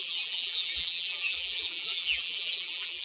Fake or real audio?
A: fake